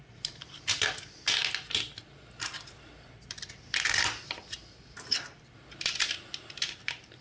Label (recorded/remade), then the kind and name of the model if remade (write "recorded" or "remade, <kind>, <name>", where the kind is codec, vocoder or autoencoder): remade, vocoder, BigVGAN v2